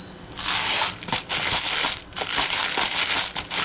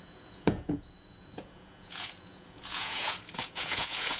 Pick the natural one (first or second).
first